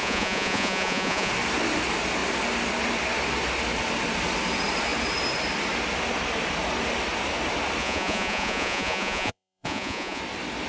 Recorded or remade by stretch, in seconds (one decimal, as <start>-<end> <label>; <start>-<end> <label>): 0.0-1.3 remade; 1.3-7.8 recorded; 7.8-10.2 remade; 10.2-10.7 recorded